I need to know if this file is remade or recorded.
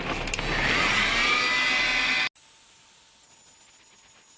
recorded